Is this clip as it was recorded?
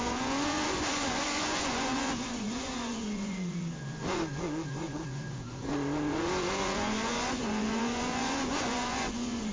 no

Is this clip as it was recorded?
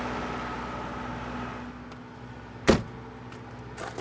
yes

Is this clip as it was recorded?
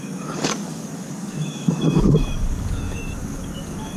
no